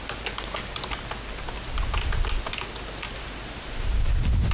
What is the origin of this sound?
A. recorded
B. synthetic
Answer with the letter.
A